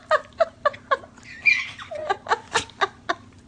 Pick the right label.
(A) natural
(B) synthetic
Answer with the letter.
A